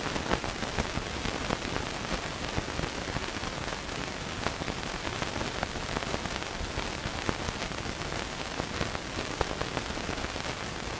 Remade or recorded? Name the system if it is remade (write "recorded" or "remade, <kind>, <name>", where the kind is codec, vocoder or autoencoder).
recorded